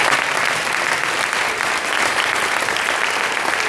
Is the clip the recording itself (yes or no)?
yes